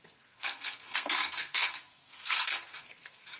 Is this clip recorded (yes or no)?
no